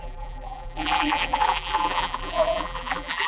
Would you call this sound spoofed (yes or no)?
yes